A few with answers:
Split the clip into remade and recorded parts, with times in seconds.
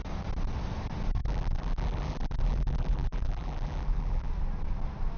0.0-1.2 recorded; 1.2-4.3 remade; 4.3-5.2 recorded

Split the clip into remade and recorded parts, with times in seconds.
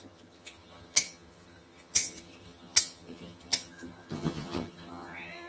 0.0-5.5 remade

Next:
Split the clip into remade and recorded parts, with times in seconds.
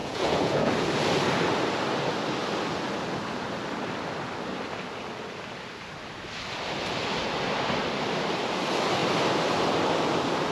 0.0-0.7 remade; 0.7-10.5 recorded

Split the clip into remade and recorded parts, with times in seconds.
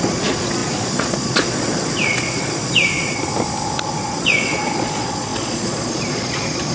0.0-3.2 remade; 3.2-3.8 recorded; 3.8-6.7 remade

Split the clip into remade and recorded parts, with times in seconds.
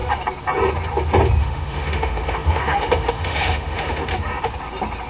0.0-1.4 recorded; 1.4-4.1 remade; 4.1-5.1 recorded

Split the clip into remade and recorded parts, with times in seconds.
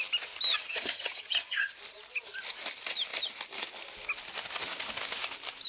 0.0-0.5 recorded; 0.5-1.7 remade; 1.7-5.7 recorded